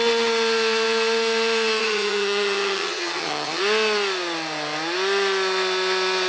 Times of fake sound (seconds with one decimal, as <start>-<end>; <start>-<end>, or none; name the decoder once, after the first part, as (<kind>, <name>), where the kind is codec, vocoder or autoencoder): 1.8-3.6 (vocoder, HiFi-GAN)